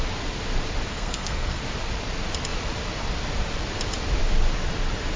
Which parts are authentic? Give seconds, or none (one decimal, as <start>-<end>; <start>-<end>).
0.0-0.9; 1.6-5.2